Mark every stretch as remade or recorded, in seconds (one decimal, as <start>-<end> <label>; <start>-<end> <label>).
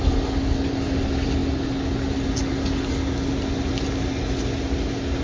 0.0-5.2 recorded